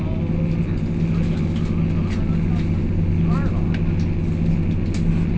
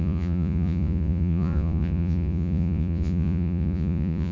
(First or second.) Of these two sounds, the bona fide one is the first